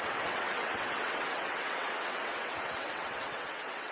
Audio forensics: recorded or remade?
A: remade